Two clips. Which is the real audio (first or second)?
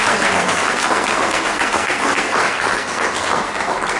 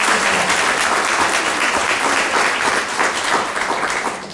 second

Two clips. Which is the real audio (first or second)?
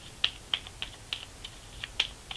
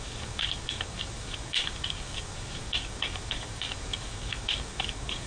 first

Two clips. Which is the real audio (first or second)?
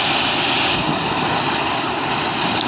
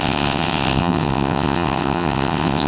first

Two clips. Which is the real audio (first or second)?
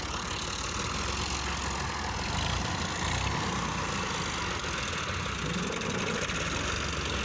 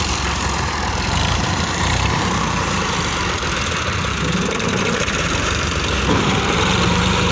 first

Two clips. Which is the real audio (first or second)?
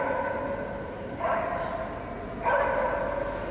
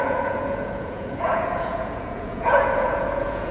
first